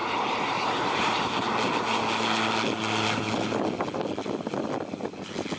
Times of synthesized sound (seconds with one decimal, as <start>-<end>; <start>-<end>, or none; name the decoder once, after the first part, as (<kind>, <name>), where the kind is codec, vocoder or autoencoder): 0.0-1.3 (vocoder, BigVGAN v2)